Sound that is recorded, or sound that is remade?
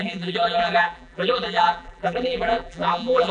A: remade